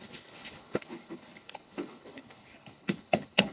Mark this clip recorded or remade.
remade